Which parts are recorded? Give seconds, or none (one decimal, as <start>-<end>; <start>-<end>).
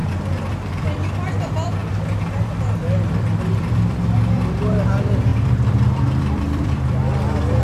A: 7.0-7.6